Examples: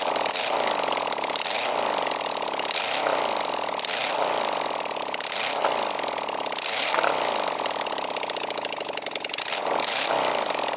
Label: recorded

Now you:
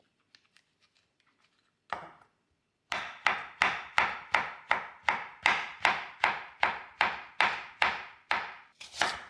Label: recorded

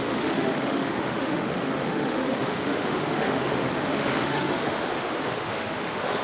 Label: remade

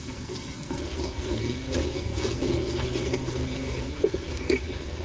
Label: remade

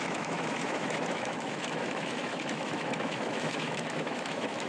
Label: remade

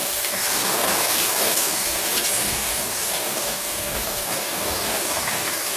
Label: remade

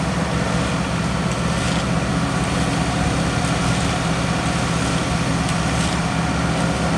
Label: recorded